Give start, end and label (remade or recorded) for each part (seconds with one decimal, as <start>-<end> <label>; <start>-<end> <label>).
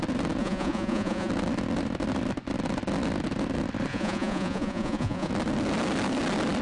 0.0-0.4 recorded; 0.4-1.3 remade; 1.3-3.9 recorded; 3.9-5.3 remade; 5.3-6.6 recorded